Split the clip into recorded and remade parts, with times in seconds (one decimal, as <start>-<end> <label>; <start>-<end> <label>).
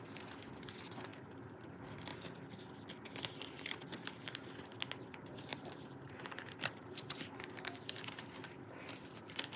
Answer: 0.0-5.5 recorded; 5.5-8.9 remade; 8.9-9.6 recorded